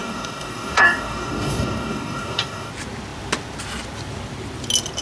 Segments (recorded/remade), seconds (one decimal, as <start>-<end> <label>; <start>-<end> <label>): 0.0-2.7 remade; 2.7-5.0 recorded

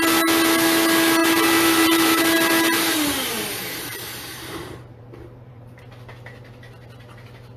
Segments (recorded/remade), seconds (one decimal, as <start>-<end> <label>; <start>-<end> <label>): 0.0-1.2 recorded; 1.2-5.8 remade; 5.8-7.6 recorded

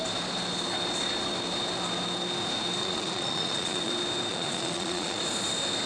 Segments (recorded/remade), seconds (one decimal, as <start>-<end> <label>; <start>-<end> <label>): 0.0-2.8 recorded; 2.8-3.9 remade; 3.9-4.3 recorded; 4.3-5.2 remade; 5.2-5.9 recorded

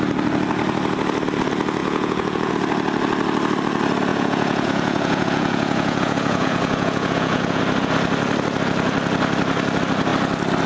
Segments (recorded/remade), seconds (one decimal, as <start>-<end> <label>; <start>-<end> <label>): 0.0-1.8 recorded; 1.8-2.5 remade; 2.5-4.1 recorded; 4.1-7.6 remade; 7.6-10.7 recorded

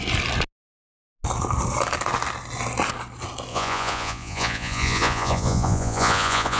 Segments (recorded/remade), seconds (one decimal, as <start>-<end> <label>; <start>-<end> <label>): 0.0-3.5 recorded; 3.5-6.6 remade

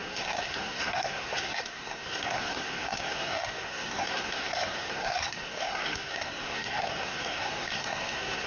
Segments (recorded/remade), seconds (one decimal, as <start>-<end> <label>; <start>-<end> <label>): 0.0-8.5 remade

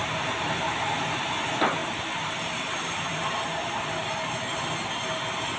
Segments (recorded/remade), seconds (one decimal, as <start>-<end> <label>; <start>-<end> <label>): 0.0-1.1 remade; 1.1-1.8 recorded; 1.8-3.9 remade; 3.9-5.6 recorded

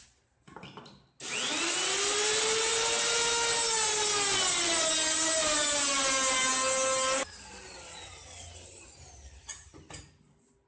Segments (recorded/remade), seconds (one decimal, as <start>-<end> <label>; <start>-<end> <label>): 0.0-10.7 recorded